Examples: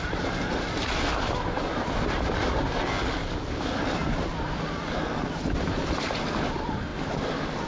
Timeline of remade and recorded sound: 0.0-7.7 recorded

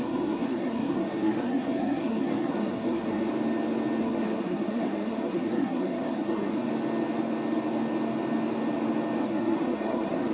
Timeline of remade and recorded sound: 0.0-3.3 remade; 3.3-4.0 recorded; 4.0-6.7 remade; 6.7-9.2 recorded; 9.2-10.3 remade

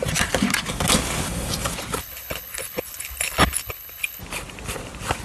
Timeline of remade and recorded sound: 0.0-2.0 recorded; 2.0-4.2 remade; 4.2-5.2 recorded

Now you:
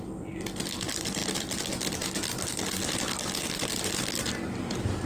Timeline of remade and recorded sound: 0.0-5.1 recorded